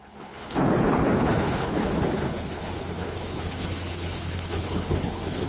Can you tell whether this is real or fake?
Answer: fake